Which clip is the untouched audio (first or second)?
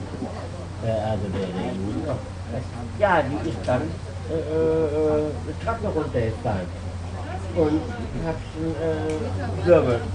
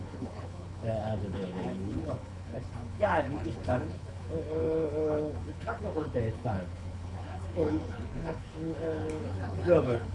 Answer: first